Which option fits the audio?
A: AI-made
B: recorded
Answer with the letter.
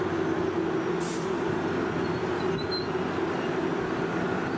B